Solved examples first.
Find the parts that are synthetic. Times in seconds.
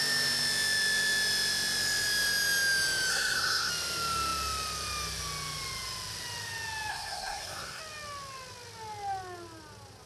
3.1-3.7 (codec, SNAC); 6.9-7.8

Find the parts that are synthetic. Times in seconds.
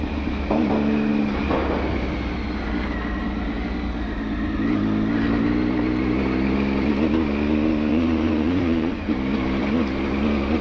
7.9-9.1 (vocoder, Vocos)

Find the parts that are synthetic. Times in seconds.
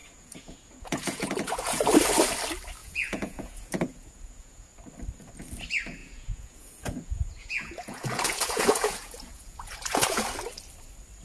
0.0-1.8 (vocoder, Vocos); 2.8-4.7; 6.0-10.2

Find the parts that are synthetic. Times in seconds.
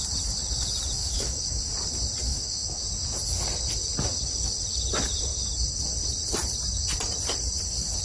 1.0-1.6 (autoencoder, DAC-VAE); 2.3-2.8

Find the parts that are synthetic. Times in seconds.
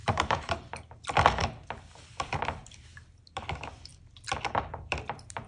0.0-0.8 (vocoder, BigVGAN v2)